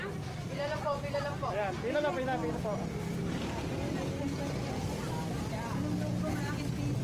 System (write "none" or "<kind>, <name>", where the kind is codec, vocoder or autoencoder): none